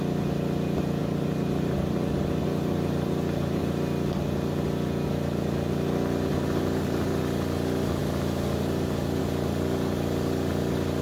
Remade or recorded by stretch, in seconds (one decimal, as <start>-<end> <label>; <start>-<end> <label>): 0.0-1.0 recorded; 1.0-3.6 remade; 3.6-6.3 recorded; 6.3-7.2 remade; 7.2-11.0 recorded